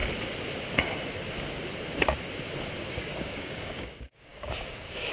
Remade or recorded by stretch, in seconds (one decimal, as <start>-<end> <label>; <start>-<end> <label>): 0.0-2.9 recorded; 2.9-5.1 remade